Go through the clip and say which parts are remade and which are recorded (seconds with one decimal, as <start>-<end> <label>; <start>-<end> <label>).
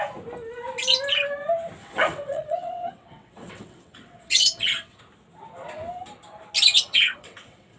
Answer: 0.0-1.8 recorded; 1.8-5.0 remade; 5.0-6.7 recorded; 6.7-7.8 remade